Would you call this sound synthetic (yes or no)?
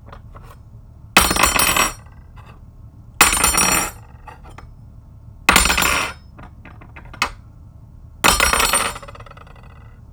no